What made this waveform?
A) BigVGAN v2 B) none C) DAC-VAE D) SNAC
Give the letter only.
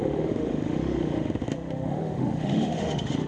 C